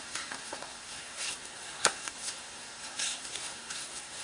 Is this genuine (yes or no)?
no